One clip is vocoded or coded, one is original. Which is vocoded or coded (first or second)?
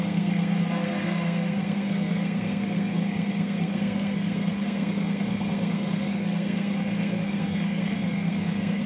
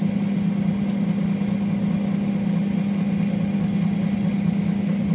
first